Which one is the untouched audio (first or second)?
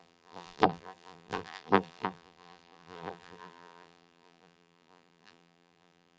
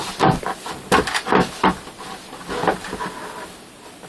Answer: second